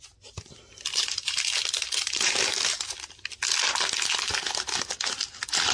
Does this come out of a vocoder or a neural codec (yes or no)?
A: no